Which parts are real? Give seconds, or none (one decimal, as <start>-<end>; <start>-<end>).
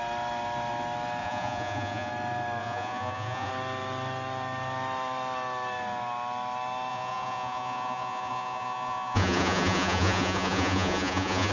0.0-1.2; 2.1-2.6; 3.5-6.9